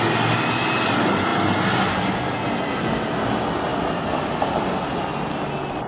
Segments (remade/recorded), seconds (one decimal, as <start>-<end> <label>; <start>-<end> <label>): 0.0-5.9 recorded

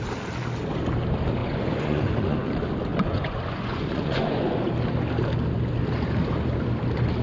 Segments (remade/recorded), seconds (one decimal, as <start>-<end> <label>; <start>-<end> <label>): 0.0-1.4 recorded; 1.4-2.5 remade; 2.5-2.9 recorded; 2.9-4.7 remade; 4.7-7.2 recorded

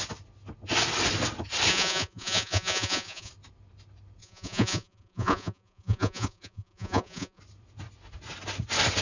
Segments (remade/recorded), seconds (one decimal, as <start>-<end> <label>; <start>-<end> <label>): 0.0-1.7 recorded; 1.7-3.3 remade; 3.3-4.2 recorded; 4.2-7.4 remade; 7.4-9.0 recorded

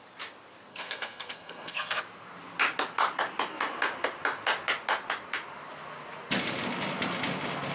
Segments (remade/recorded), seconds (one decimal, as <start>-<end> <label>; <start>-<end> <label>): 0.0-0.7 recorded; 0.7-2.0 remade; 2.0-7.7 recorded

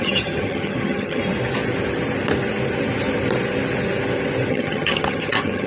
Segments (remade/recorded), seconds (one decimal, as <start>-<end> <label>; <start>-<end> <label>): 0.0-1.2 remade; 1.2-4.5 recorded; 4.5-5.7 remade

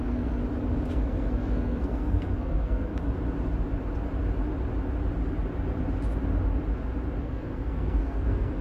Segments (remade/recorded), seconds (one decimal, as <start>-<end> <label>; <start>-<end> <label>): 0.0-0.4 remade; 0.4-0.9 recorded; 0.9-2.9 remade; 2.9-7.2 recorded; 7.2-8.6 remade

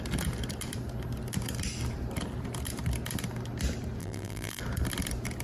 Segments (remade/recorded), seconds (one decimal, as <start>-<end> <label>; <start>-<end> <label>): 0.0-4.0 recorded; 4.0-4.6 remade; 4.6-5.4 recorded

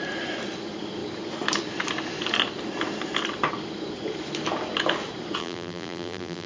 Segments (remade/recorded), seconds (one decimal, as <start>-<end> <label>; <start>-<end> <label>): 0.0-5.4 recorded; 5.4-6.5 remade